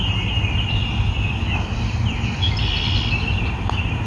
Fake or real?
real